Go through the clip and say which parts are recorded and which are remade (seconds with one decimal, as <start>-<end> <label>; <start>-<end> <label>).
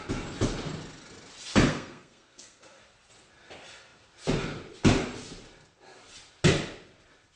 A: 0.0-1.7 recorded; 1.7-2.8 remade; 2.8-7.4 recorded